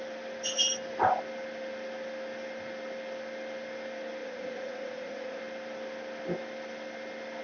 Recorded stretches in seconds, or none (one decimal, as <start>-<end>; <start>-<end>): 0.0-4.2; 5.4-7.4